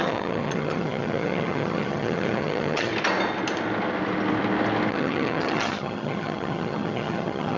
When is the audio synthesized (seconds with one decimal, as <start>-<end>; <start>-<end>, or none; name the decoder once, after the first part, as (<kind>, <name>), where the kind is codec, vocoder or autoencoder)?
0.0-2.9 (vocoder, HiFi-GAN); 4.9-7.6